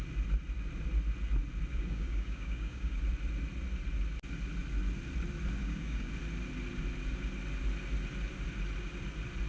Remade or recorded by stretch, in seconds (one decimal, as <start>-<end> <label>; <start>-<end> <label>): 0.0-1.7 recorded; 1.7-3.0 remade; 3.0-5.6 recorded; 5.6-6.1 remade; 6.1-9.5 recorded